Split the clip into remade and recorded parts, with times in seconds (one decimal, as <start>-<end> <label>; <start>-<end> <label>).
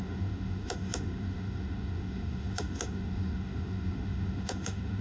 0.0-5.0 remade